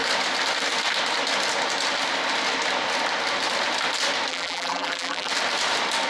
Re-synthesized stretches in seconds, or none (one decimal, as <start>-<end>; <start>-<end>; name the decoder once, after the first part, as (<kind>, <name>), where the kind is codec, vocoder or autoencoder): 4.3-5.3 (vocoder, BigVGAN v2)